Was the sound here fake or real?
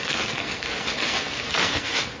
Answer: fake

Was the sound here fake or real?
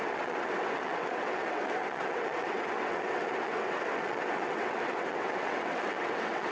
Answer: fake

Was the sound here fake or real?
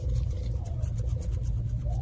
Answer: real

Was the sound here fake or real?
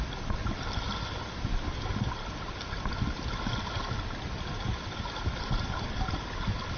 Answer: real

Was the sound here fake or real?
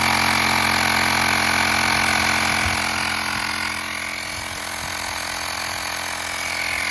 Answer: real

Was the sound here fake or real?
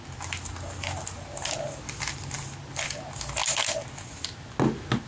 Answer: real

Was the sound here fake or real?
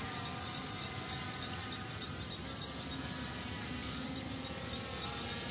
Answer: real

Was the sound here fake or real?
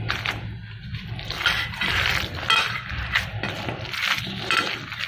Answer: real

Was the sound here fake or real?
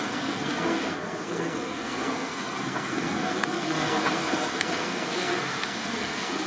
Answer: fake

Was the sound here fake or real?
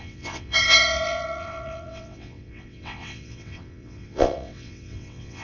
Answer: fake